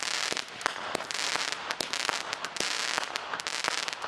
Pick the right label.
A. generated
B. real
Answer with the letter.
B